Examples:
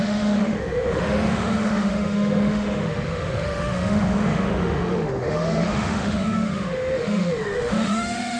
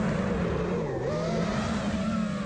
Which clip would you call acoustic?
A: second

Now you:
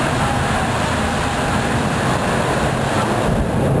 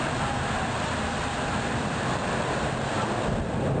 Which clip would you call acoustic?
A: first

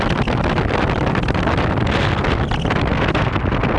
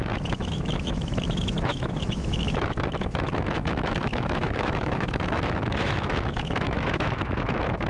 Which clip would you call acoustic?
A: first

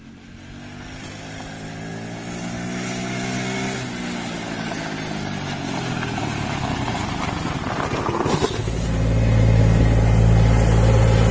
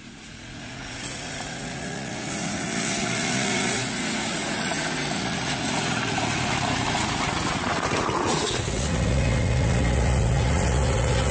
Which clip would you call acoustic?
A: first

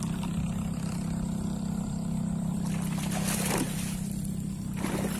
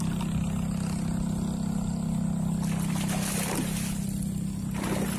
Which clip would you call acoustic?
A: second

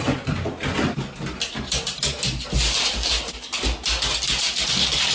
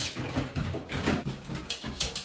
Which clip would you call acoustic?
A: first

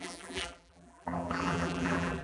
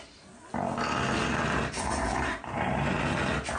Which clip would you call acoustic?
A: second